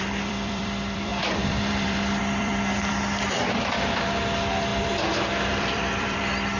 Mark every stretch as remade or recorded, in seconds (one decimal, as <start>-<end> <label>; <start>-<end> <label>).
0.0-4.7 remade; 4.7-5.4 recorded; 5.4-6.6 remade